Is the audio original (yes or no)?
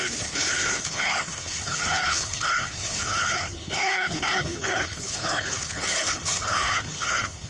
no